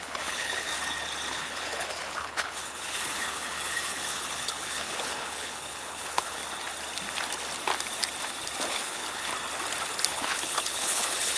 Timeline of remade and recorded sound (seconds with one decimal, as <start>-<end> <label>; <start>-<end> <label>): 0.0-0.7 remade; 0.7-1.3 recorded; 1.3-6.4 remade; 6.4-8.7 recorded; 8.7-9.3 remade; 9.3-10.1 recorded; 10.1-11.4 remade